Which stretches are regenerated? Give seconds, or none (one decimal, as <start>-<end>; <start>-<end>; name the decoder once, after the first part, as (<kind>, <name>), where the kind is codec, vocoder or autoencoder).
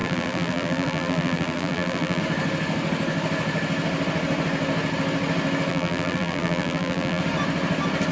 0.0-2.2 (vocoder, BigVGAN v2); 5.7-7.2